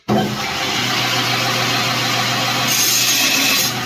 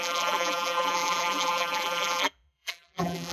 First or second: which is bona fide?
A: first